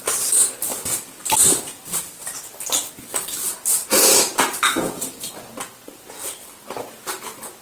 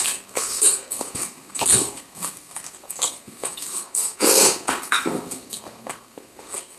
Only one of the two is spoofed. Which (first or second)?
second